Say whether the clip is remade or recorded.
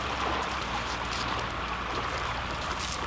recorded